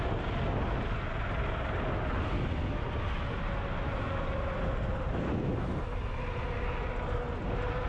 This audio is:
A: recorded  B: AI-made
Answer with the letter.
A